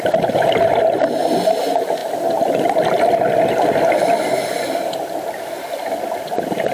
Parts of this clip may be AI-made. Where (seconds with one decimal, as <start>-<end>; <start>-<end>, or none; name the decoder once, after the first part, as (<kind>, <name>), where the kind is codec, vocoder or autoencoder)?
none